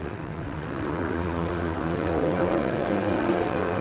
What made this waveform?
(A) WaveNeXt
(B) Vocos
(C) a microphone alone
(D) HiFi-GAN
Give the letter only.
A